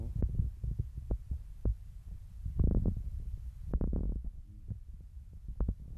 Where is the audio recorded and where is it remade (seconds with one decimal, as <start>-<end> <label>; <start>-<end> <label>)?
0.0-6.0 recorded